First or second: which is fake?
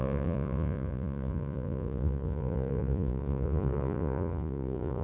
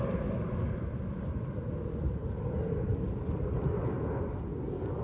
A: first